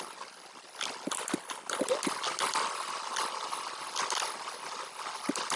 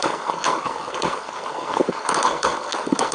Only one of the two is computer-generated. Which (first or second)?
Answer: second